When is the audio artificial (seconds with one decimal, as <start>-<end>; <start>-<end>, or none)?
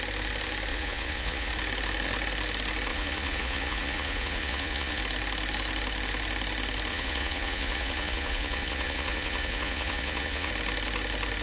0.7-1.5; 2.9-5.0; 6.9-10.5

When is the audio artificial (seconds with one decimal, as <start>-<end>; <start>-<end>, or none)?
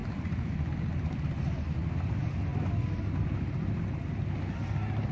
none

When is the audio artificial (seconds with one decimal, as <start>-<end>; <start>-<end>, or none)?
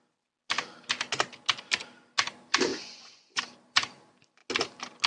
2.7-3.4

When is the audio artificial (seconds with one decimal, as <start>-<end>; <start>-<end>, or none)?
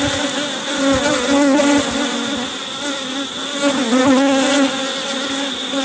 none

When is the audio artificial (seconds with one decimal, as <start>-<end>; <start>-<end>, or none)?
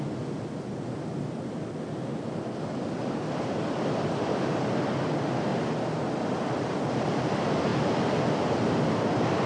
none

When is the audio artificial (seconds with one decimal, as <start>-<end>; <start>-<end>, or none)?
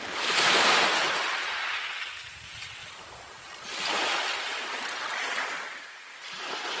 none